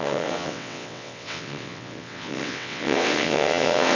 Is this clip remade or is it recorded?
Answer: remade